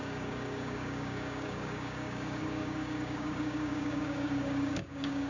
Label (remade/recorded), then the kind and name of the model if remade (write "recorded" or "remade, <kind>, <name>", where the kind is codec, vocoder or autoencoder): remade, codec, DAC